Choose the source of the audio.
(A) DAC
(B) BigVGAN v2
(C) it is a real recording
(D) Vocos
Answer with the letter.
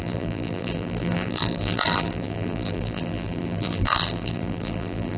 B